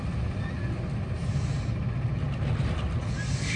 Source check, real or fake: real